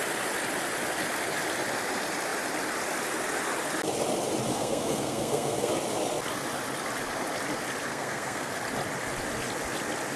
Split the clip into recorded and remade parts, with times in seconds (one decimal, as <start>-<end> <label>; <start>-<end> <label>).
0.0-4.5 recorded; 4.5-5.7 remade; 5.7-7.9 recorded; 7.9-8.5 remade; 8.5-10.2 recorded